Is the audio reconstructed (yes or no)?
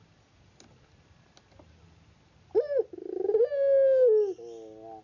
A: no